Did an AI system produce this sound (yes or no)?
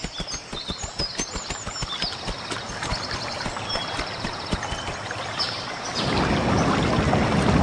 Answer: no